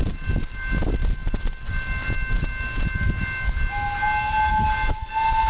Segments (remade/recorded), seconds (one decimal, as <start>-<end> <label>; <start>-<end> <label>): 0.0-5.5 recorded